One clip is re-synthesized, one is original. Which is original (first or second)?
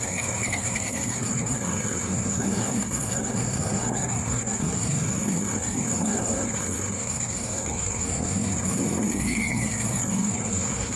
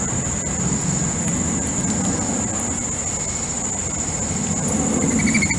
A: second